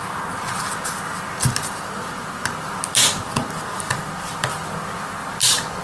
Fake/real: real